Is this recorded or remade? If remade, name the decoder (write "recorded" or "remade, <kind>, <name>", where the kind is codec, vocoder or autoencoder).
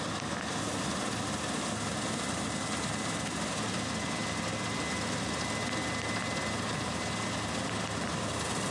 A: recorded